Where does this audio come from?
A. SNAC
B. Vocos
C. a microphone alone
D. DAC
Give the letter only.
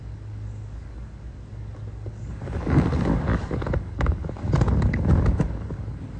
D